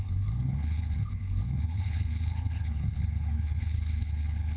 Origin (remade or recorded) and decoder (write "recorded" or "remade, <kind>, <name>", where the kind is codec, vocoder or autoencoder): remade, codec, HILCodec